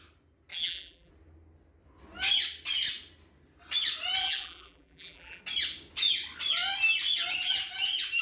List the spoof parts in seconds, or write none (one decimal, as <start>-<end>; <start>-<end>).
0.5-1.1; 4.2-5.4